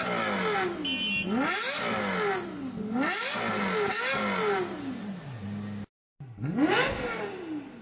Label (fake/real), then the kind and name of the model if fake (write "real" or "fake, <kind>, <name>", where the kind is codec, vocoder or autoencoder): real